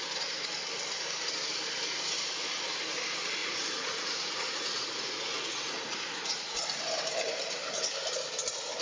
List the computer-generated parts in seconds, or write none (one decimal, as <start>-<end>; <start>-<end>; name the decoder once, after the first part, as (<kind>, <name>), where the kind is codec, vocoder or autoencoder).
3.4-6.8 (vocoder, Vocos)